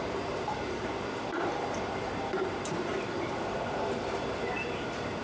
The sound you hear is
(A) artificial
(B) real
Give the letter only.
A